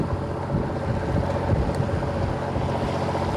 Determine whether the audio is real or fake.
real